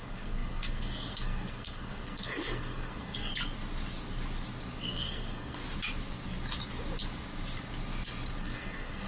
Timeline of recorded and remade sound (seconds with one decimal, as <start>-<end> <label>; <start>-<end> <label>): 0.0-3.3 remade; 3.3-4.8 recorded; 4.8-5.6 remade; 5.6-8.4 recorded; 8.4-9.1 remade